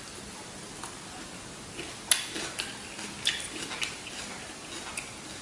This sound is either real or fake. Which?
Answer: real